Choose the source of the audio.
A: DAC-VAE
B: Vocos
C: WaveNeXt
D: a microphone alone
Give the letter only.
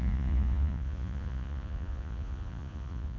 B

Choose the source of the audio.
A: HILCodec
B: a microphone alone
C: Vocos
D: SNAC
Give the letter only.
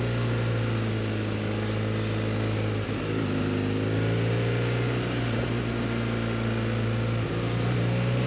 B